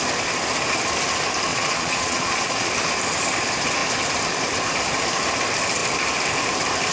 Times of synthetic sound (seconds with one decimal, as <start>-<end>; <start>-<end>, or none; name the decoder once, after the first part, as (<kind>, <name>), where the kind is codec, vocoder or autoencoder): 1.5-2.7 (vocoder, Vocos)